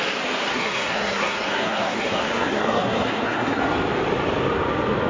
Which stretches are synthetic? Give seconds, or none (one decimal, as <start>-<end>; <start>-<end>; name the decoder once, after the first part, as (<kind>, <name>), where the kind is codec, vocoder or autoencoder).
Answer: 0.5-3.6 (codec, SNAC)